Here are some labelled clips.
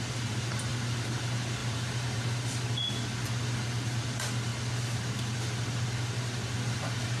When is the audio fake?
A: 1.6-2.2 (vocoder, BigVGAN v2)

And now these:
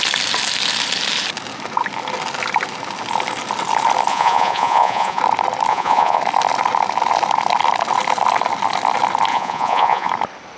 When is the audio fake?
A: 4.1-5.2 (vocoder, Vocos); 5.7-6.2; 9.3-10.1

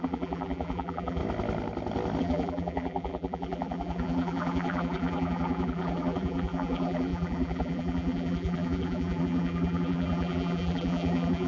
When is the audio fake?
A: 0.0-1.2 (vocoder, BigVGAN v2); 2.2-11.5

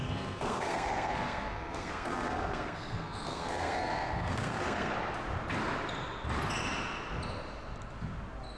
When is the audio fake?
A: 0.0-4.9 (codec, SNAC)

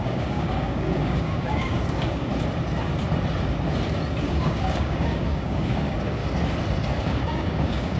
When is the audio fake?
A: 0.0-2.3 (codec, DAC); 4.2-6.2; 7.0-8.0

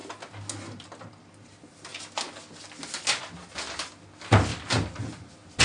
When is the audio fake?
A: none